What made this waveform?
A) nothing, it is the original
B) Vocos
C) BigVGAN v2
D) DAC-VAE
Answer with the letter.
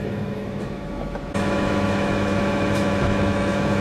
D